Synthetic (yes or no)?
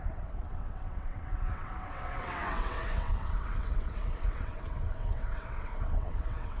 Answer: yes